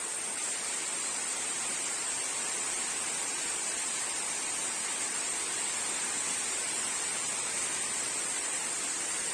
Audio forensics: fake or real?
real